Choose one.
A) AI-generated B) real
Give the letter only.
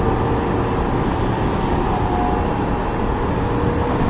B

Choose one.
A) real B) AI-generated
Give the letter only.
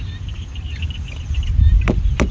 A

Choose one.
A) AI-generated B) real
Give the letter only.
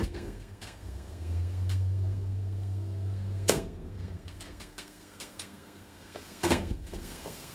A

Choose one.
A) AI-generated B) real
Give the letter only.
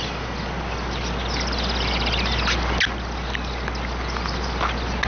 B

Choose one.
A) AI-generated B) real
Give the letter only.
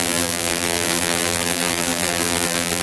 A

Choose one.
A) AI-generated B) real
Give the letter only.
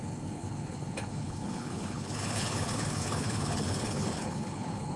A